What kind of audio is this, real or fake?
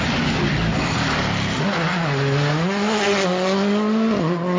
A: real